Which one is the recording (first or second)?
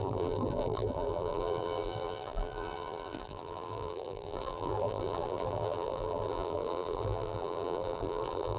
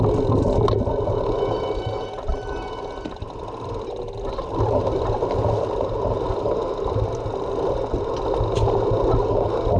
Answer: second